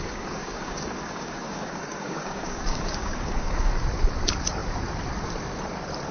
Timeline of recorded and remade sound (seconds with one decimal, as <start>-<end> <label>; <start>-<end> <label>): 0.0-3.7 remade; 3.7-6.1 recorded